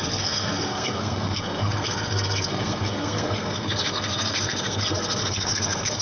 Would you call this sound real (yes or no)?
no